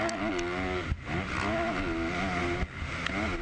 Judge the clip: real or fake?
real